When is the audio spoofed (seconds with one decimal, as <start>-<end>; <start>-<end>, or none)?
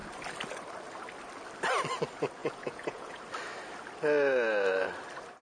2.4-3.2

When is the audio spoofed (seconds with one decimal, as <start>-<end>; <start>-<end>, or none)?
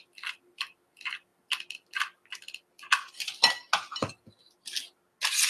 none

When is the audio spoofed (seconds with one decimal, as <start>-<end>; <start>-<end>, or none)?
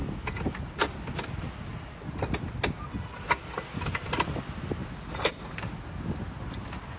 none